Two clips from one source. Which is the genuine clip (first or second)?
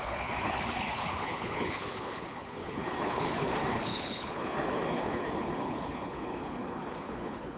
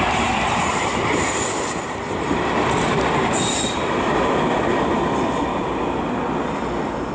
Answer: second